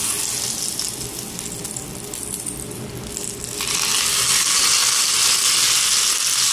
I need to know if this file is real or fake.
real